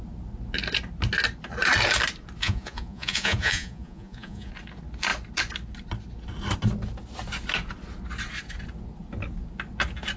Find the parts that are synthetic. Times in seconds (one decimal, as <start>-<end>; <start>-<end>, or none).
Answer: 2.4-4.5

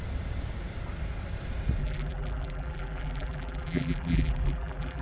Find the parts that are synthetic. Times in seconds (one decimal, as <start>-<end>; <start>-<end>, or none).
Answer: 1.8-5.0

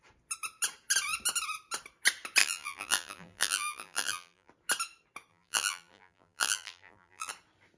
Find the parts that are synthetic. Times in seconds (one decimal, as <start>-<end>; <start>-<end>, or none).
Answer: 2.4-4.5; 5.3-7.3

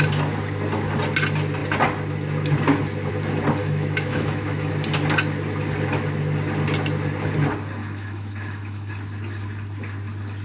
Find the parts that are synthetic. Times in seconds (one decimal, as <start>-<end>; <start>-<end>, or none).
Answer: 3.6-4.7; 7.8-8.9